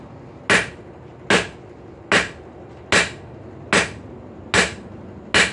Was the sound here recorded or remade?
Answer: recorded